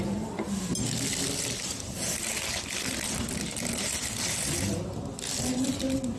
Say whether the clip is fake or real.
real